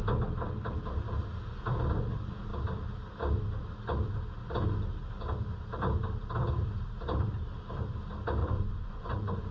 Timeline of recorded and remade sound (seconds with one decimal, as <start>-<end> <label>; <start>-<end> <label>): 0.0-8.4 recorded; 8.4-9.5 remade